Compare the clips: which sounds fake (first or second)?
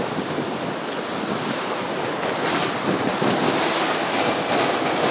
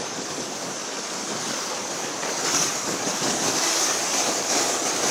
second